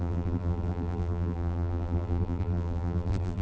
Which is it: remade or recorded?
remade